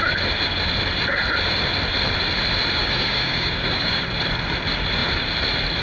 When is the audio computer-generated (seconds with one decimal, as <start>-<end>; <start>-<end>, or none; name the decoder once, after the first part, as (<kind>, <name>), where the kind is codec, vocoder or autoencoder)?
2.8-4.0 (codec, DAC)